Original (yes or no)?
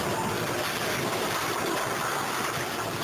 yes